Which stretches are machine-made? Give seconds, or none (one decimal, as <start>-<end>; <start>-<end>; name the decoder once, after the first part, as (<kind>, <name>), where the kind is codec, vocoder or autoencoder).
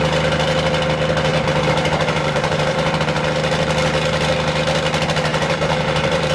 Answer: 1.3-3.0 (vocoder, BigVGAN v2); 5.3-6.3